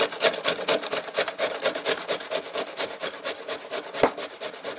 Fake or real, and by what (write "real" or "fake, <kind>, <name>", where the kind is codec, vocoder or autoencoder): real